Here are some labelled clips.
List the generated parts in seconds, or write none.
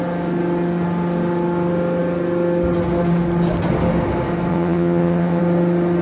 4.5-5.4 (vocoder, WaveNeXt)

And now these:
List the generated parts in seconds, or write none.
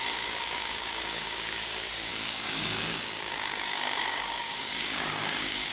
0.0-5.7 (codec, DAC)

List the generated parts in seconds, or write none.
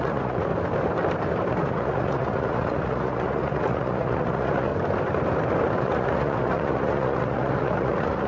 0.0-0.5 (vocoder, Vocos); 1.5-4.7; 5.8-8.3